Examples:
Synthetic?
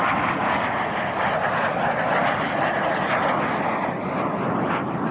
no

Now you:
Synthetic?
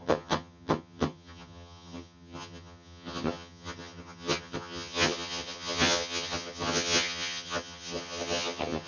yes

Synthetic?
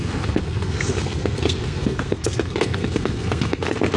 yes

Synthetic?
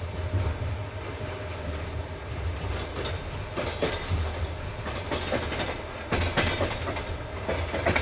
no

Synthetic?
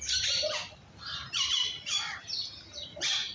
no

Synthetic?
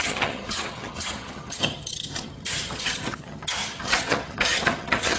yes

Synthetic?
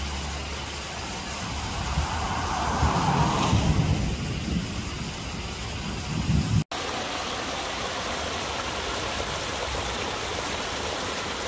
no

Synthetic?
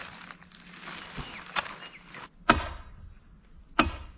no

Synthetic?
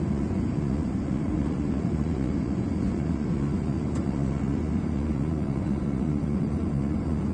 yes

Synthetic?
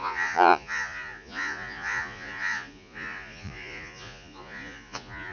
yes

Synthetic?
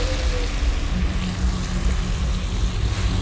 no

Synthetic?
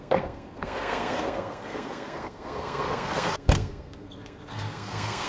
yes